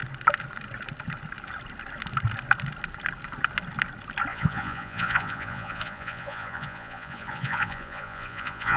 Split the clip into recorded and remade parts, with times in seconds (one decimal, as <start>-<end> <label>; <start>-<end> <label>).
0.0-4.3 recorded; 4.3-8.8 remade